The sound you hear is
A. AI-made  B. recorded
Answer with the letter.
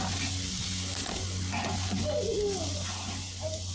B